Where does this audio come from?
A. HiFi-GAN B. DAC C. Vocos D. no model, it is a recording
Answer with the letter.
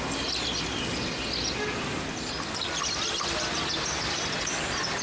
D